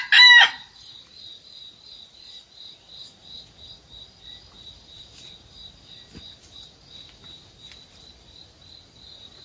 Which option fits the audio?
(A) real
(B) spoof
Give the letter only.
A